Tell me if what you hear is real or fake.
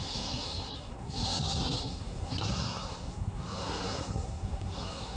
fake